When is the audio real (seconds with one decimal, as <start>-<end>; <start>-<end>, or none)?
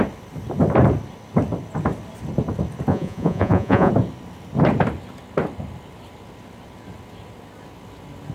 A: 0.0-2.9; 3.9-8.3